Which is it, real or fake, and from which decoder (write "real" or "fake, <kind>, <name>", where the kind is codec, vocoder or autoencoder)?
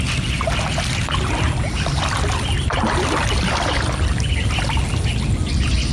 real